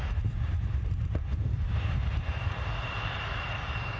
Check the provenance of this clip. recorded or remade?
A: remade